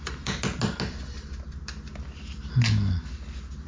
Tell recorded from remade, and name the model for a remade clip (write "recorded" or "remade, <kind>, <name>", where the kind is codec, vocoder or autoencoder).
recorded